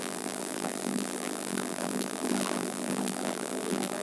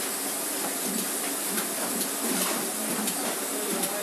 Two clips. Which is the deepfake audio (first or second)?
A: first